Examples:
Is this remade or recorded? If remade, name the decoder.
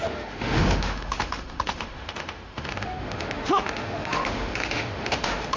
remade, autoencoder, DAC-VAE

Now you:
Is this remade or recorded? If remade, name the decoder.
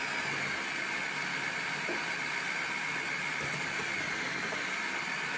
recorded